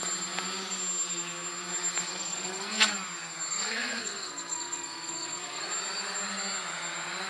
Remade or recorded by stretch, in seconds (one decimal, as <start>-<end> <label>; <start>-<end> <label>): 0.0-2.1 recorded; 2.1-2.9 remade; 2.9-3.5 recorded; 3.5-5.6 remade; 5.6-7.3 recorded